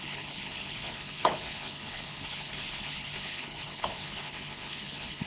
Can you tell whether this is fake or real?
fake